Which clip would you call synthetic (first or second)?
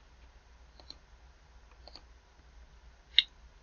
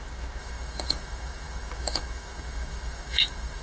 second